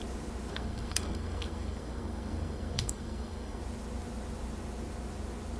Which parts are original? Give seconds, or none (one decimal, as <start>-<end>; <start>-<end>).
0.0-0.5; 3.6-5.6